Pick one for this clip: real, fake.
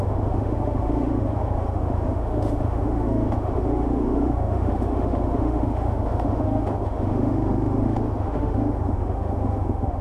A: fake